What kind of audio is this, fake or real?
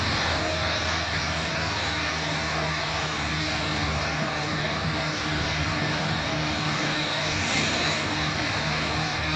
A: fake